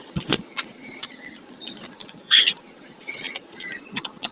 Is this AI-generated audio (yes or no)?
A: yes